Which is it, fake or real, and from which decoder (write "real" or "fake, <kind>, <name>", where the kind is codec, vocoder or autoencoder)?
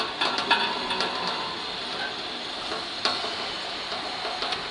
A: real